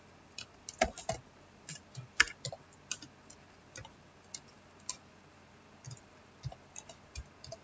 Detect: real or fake real